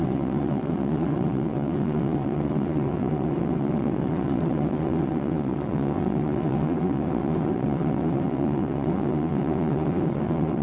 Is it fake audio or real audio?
fake